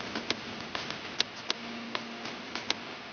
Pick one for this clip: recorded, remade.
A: recorded